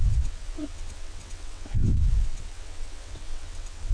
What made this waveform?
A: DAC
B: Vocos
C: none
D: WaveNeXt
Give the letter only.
D